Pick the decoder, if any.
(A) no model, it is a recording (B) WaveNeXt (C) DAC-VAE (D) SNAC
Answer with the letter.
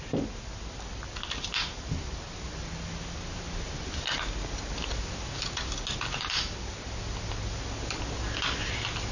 A